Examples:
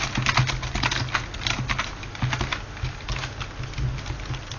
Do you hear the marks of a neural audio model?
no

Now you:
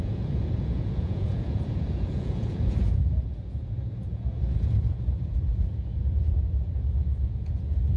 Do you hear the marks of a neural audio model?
yes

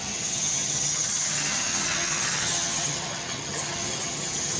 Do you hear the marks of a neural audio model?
yes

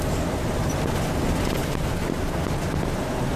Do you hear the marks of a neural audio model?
no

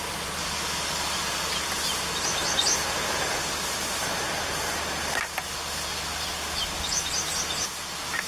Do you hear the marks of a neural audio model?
no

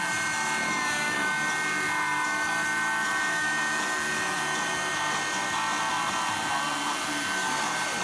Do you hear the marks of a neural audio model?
no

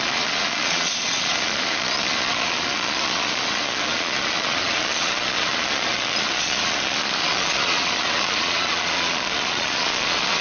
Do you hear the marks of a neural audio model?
yes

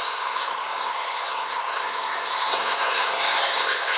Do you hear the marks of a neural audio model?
yes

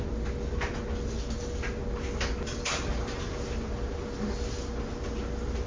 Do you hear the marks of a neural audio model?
no